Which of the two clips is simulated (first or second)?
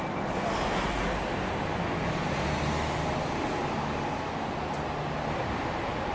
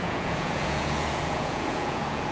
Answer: second